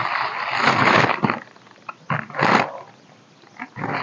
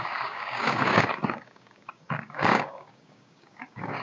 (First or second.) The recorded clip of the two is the first